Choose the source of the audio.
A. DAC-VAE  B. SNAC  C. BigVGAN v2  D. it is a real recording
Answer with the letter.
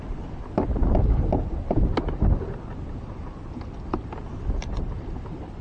D